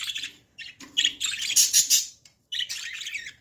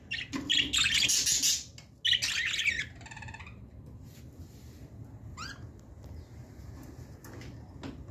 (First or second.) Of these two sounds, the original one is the second